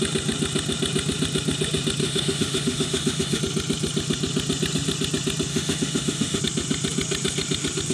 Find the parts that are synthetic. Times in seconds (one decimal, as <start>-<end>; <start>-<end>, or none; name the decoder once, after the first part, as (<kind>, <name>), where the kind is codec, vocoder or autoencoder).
2.0-3.4 (autoencoder, DAC-VAE); 5.5-6.4